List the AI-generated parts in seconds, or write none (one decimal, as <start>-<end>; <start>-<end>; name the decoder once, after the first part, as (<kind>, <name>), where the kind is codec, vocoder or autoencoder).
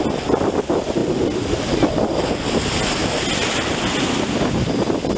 none